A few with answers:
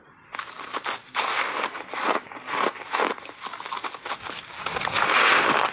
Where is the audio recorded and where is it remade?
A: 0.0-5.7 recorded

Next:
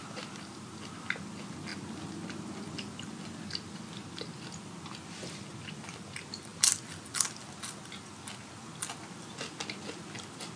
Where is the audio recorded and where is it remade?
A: 0.0-10.6 recorded

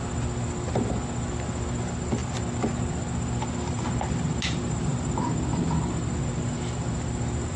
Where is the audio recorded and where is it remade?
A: 0.0-7.6 recorded

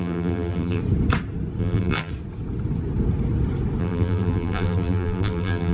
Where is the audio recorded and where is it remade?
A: 0.0-0.8 remade; 0.8-1.6 recorded; 1.6-2.1 remade; 2.1-3.8 recorded; 3.8-5.7 remade